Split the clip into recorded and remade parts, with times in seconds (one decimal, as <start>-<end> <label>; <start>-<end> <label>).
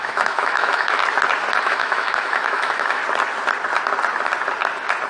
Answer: 0.0-1.0 remade; 1.0-1.6 recorded; 1.6-3.0 remade; 3.0-5.1 recorded